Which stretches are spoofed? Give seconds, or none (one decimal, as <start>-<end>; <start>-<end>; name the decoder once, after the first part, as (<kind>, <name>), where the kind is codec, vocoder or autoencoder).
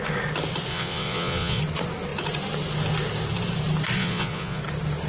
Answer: 0.7-1.6 (vocoder, Vocos); 4.0-4.6